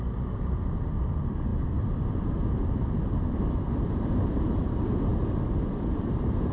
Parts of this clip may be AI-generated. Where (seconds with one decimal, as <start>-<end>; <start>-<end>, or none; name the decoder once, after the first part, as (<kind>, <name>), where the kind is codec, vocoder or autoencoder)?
0.0-6.5 (vocoder, BigVGAN v2)